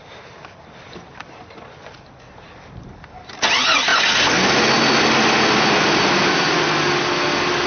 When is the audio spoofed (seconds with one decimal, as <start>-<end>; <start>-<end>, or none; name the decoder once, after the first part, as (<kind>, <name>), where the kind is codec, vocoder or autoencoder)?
none